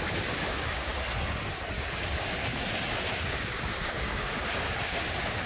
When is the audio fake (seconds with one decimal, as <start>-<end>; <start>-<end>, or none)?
0.0-0.9; 1.9-2.6; 3.3-5.5